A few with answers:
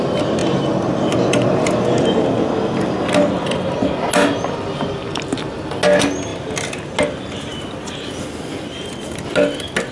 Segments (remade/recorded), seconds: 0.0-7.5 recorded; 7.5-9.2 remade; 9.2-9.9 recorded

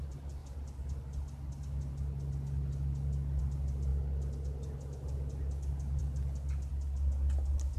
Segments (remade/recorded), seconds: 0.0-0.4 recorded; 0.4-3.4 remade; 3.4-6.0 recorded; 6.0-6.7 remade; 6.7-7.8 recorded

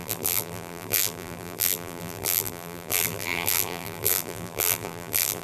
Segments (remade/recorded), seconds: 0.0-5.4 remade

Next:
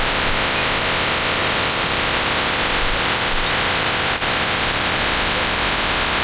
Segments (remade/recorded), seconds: 0.0-1.4 recorded; 1.4-5.0 remade; 5.0-6.2 recorded